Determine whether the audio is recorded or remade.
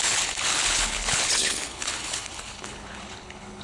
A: remade